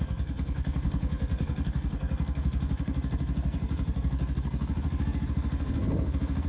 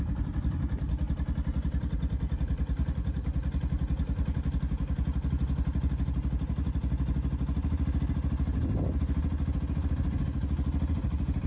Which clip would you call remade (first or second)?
first